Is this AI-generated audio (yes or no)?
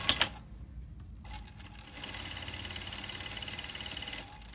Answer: no